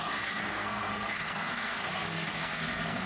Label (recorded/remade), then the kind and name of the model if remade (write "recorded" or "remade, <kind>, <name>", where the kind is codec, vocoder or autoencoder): remade, codec, SNAC